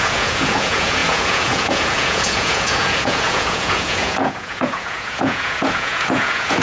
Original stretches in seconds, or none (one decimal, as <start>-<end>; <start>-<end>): none